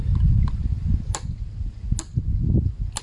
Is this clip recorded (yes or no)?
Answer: yes